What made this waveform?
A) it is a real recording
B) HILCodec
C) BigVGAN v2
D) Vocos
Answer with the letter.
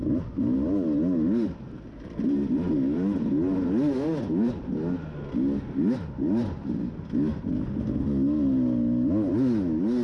A